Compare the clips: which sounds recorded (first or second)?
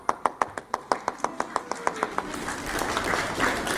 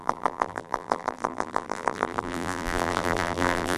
first